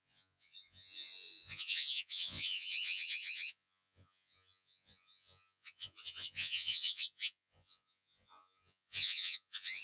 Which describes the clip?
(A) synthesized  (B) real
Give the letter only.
A